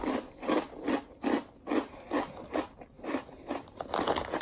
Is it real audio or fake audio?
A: real